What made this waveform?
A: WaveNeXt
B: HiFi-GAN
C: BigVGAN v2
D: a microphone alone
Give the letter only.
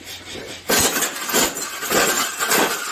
D